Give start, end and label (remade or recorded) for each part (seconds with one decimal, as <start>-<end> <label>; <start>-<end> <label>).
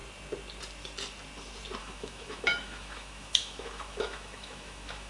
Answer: 0.0-1.8 recorded; 1.8-5.1 remade